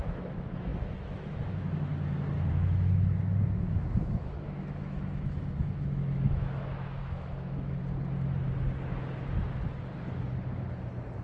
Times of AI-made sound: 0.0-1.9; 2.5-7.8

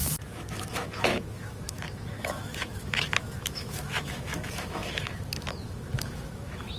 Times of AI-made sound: 0.0-6.8

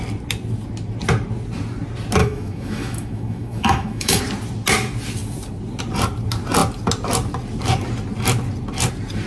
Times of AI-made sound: 2.2-4.2